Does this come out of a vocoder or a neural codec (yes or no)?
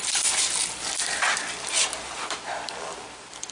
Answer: no